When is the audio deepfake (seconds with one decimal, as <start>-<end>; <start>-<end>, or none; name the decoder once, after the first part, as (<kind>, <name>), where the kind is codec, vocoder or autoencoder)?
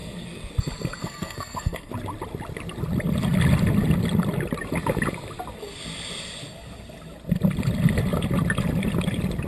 0.0-0.5 (codec, SNAC); 1.0-1.9